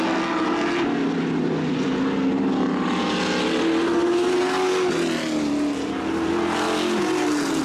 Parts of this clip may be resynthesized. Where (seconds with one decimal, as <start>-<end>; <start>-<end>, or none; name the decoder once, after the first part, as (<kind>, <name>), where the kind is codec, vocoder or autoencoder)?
none

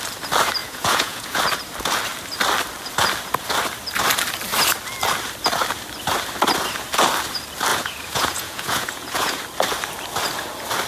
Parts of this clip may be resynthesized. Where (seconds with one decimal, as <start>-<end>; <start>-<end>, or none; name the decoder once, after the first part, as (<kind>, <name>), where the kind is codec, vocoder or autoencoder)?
0.6-1.4 (vocoder, Vocos); 7.7-9.4

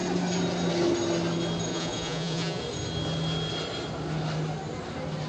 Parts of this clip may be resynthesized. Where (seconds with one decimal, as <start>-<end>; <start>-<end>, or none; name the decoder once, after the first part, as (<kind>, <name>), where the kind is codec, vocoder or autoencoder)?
1.7-2.6 (vocoder, Vocos)

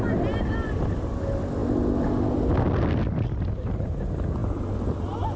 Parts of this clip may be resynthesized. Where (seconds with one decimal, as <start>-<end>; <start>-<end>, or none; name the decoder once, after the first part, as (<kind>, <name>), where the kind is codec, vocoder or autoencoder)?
none

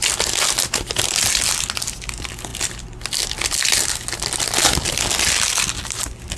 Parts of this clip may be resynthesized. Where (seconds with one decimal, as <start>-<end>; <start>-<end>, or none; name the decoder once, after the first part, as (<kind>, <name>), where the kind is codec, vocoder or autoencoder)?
none

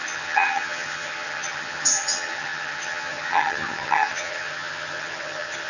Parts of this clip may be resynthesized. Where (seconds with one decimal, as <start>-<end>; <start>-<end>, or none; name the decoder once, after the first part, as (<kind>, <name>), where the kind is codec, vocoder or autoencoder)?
0.0-5.7 (vocoder, HiFi-GAN)

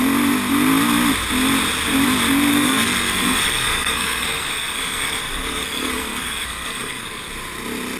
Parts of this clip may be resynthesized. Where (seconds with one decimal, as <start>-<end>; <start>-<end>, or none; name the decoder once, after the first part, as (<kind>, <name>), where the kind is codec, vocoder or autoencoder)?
2.5-7.3 (codec, SNAC)

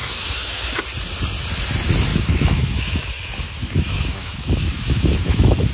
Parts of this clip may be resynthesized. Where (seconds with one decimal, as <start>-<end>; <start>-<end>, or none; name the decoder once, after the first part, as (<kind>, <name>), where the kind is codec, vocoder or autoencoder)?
0.0-0.8 (autoencoder, DAC-VAE); 2.1-5.7